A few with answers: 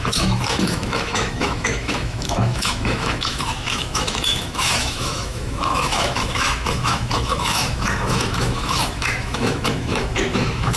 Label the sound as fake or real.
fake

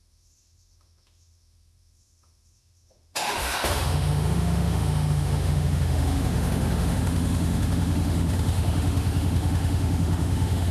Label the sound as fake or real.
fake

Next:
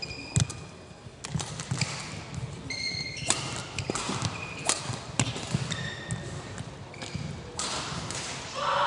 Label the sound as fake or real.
real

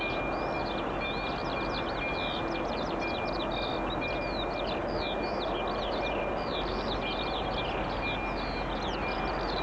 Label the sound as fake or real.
real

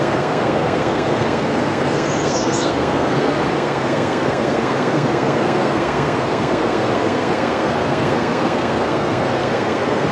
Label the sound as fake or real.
fake